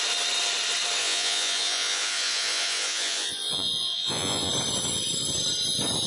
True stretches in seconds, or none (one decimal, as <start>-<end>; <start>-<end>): 0.0-1.0; 4.5-6.1